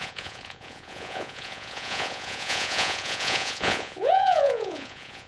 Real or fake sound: fake